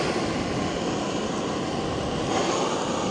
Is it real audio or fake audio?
real